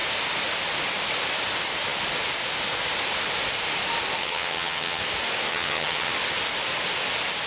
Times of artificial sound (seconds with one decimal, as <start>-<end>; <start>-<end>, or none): 4.2-5.0; 5.5-6.1